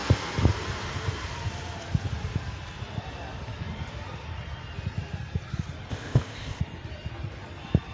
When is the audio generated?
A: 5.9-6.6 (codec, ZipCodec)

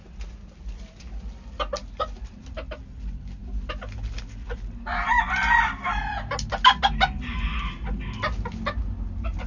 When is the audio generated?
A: none

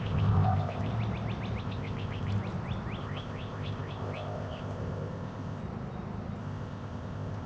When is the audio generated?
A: 0.0-0.9 (codec, ZipCodec); 1.6-2.3; 3.0-5.6; 6.4-7.5